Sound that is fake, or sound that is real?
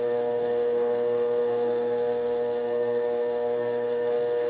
fake